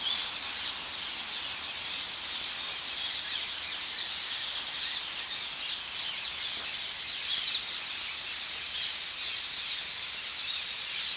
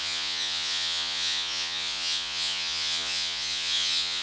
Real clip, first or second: first